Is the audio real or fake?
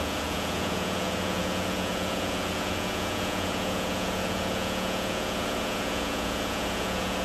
fake